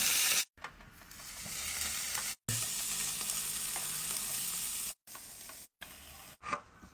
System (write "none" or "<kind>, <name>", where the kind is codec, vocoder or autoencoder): none